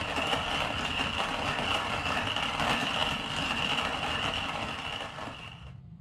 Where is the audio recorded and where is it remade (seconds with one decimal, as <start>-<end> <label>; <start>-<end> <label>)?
0.0-6.0 recorded